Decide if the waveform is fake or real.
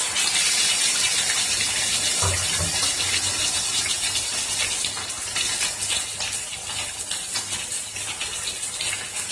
real